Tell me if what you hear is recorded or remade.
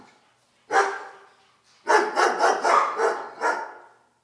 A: recorded